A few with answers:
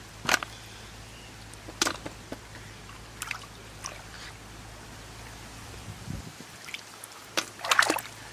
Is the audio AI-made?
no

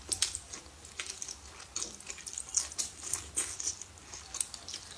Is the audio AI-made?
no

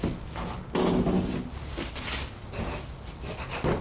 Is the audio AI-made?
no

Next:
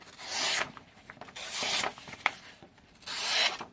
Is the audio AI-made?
no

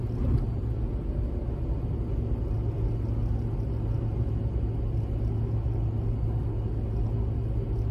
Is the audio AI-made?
no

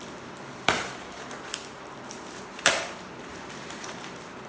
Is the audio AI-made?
yes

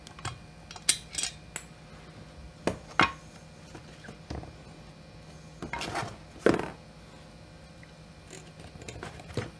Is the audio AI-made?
no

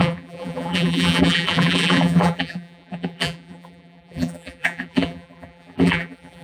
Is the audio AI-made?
yes